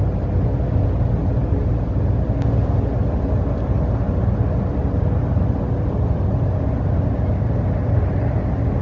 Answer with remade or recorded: recorded